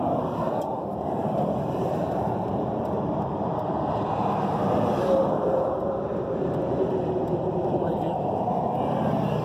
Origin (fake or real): fake